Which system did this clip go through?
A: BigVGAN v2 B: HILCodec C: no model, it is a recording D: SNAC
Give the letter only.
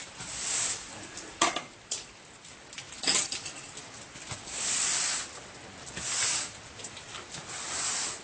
C